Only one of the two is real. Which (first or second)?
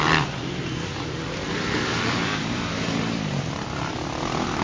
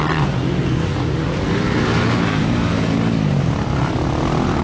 second